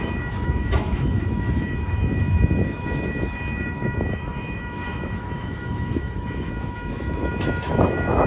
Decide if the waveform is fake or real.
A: fake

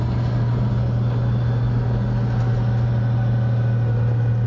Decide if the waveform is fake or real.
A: real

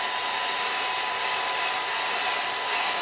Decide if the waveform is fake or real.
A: real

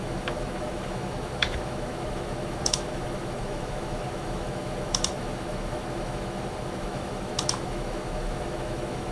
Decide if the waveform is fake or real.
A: fake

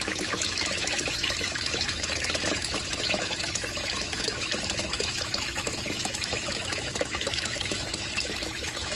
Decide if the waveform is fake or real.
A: fake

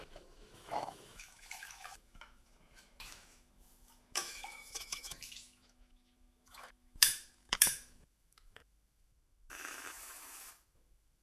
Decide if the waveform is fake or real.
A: fake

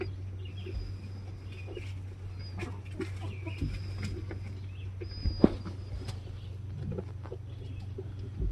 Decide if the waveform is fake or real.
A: real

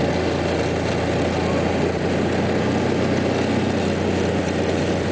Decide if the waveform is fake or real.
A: real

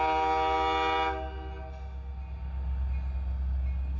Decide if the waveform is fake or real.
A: real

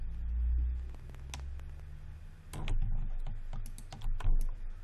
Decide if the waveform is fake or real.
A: real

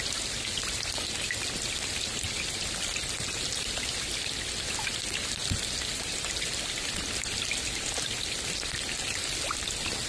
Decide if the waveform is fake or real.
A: real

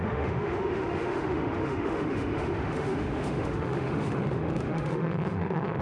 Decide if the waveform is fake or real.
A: fake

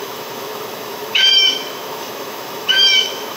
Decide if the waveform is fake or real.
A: fake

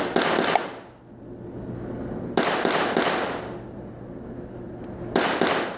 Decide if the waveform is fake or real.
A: real